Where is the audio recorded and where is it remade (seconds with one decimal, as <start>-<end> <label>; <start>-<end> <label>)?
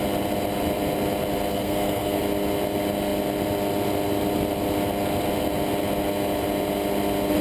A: 0.0-1.5 recorded; 1.5-2.2 remade; 2.2-7.4 recorded